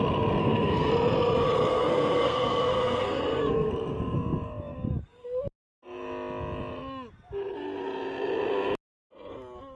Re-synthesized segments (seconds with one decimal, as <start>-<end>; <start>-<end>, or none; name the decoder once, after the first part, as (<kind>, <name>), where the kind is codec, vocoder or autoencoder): 0.4-0.9 (codec, SNAC); 1.7-3.7